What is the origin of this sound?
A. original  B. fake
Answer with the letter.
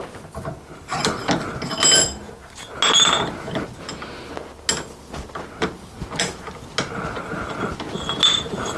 A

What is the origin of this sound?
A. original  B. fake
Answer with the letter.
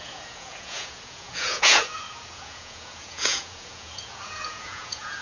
B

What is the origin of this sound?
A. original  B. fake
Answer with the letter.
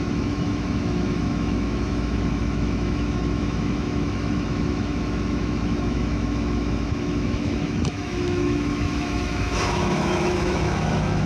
B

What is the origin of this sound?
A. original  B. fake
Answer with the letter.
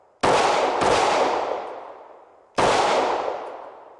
A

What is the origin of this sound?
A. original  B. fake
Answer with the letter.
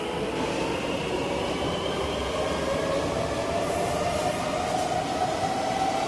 A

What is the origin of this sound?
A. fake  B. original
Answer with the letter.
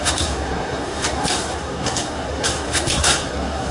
A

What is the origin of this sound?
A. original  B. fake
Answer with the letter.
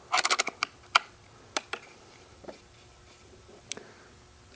A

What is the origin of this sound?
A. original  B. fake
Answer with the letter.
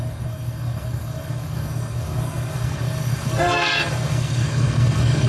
B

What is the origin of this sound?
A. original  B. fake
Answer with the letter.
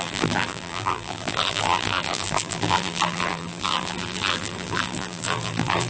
B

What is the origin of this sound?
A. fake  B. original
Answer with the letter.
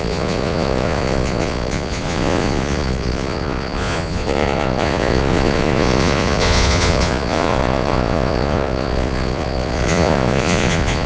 A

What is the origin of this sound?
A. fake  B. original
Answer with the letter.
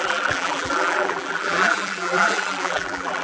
A